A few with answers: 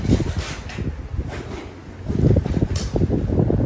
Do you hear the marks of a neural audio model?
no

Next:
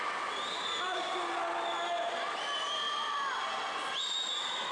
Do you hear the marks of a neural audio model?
no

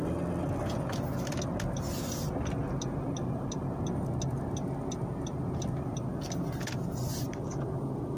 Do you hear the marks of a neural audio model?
no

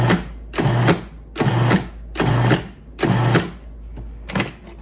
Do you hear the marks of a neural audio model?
no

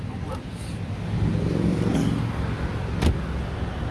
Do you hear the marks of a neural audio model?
no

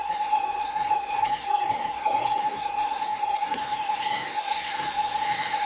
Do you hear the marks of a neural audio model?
yes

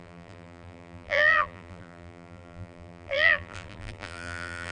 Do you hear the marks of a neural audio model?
yes